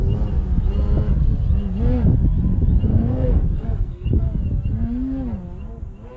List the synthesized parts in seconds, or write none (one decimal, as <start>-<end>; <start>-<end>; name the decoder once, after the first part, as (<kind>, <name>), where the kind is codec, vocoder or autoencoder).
2.9-4.3 (codec, SNAC)